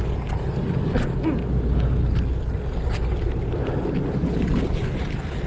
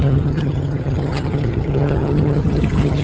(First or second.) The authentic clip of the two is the first